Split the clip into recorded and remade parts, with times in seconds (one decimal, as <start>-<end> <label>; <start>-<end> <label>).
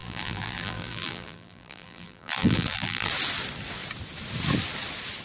0.0-3.1 remade; 3.1-5.2 recorded